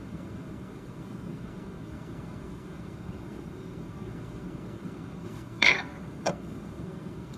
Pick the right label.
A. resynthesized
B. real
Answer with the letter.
A